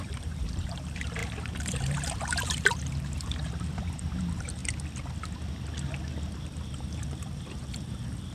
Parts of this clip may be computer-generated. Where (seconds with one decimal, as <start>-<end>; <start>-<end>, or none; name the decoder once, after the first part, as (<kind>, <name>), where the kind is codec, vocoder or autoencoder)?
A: 0.0-4.6 (vocoder, BigVGAN v2); 6.4-8.3